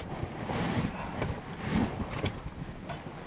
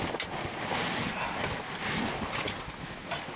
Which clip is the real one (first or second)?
second